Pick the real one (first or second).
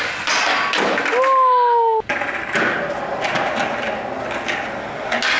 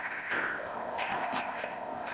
first